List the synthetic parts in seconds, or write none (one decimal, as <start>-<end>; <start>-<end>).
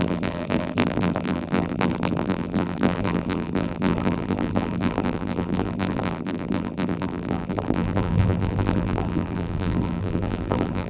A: 0.0-10.9